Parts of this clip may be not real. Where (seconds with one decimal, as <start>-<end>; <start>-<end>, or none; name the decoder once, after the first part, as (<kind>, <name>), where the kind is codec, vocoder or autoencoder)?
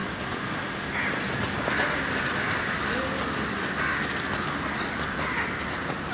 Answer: none